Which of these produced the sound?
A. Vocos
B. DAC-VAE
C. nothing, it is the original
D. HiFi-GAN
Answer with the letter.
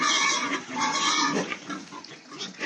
A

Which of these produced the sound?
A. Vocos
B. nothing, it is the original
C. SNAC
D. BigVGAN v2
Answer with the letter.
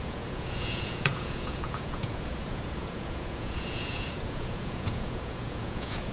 A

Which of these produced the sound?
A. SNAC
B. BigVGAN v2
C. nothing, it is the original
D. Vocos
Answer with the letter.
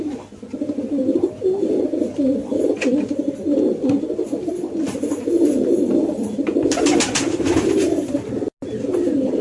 C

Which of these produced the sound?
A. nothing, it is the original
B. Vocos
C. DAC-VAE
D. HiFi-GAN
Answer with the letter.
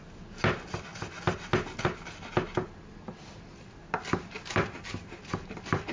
A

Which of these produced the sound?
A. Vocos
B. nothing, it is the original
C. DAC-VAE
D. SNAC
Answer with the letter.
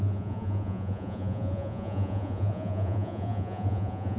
A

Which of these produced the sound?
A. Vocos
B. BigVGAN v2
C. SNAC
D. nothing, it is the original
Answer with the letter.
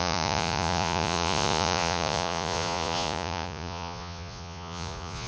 A